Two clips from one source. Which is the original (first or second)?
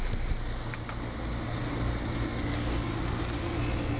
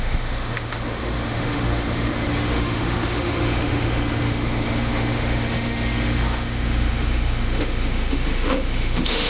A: first